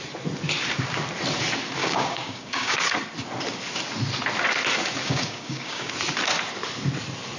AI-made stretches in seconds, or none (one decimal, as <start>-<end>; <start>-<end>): 1.8-2.8; 5.0-5.9